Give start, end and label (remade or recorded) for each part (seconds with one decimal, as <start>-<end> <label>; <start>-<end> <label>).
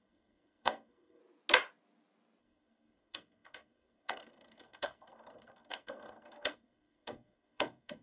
0.0-1.2 remade; 1.2-2.4 recorded; 2.4-8.0 remade